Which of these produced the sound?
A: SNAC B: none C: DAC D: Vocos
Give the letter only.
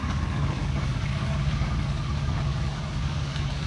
C